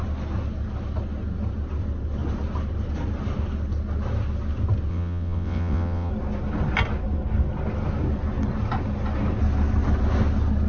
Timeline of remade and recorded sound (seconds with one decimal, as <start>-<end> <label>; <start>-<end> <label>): 0.0-4.9 recorded; 4.9-6.1 remade; 6.1-10.7 recorded